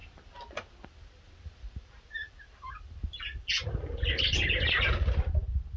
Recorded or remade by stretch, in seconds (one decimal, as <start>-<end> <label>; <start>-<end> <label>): 0.0-3.5 remade; 3.5-5.8 recorded